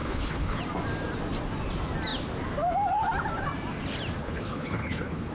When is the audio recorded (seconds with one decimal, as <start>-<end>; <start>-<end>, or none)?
0.6-4.2